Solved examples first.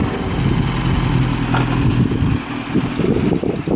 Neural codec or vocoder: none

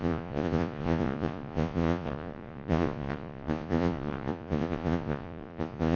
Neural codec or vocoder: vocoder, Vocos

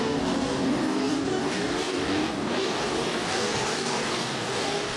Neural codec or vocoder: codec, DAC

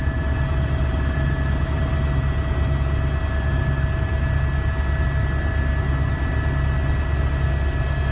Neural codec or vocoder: none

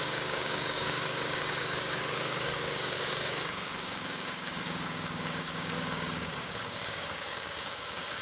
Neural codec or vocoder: codec, DAC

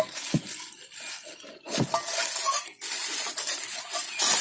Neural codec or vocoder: none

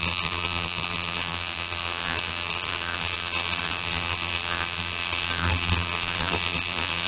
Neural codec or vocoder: vocoder, BigVGAN v2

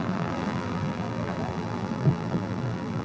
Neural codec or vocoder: vocoder, BigVGAN v2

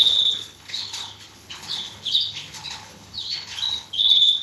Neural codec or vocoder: codec, HILCodec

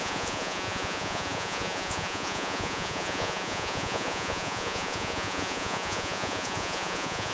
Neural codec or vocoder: vocoder, Vocos